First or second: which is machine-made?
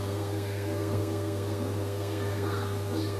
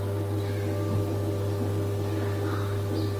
first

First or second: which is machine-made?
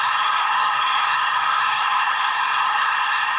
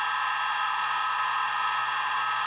first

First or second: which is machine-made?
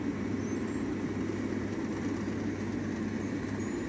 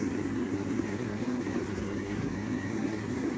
second